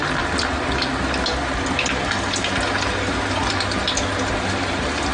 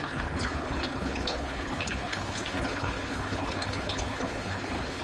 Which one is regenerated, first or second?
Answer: second